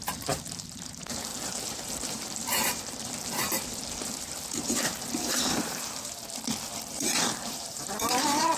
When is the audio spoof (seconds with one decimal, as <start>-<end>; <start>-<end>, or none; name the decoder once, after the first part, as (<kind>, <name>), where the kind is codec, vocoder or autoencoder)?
0.0-6.2 (vocoder, BigVGAN v2); 6.9-8.6